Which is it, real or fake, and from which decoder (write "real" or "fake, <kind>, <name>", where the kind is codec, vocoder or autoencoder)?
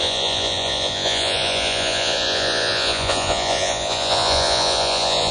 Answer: fake, vocoder, Vocos